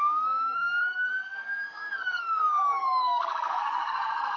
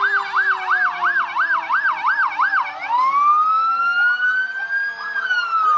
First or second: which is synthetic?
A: first